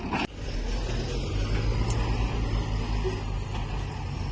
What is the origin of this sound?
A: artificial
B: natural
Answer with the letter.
B